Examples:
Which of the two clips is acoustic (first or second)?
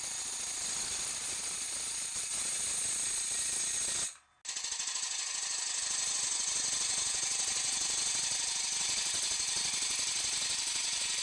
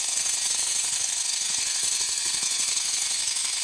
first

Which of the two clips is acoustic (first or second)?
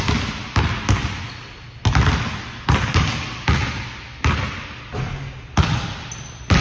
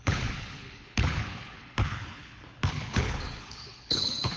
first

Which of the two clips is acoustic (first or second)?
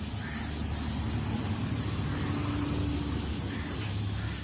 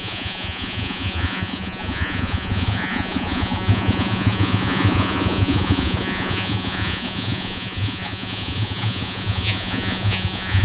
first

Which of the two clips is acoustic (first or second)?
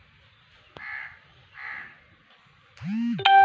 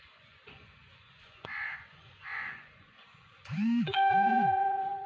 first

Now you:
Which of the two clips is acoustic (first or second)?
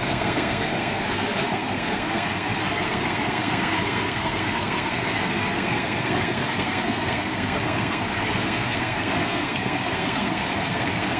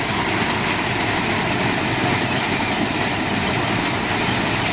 second